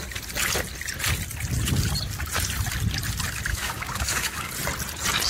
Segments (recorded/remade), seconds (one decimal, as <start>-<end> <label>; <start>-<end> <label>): 0.0-3.5 recorded; 3.5-4.5 remade; 4.5-5.3 recorded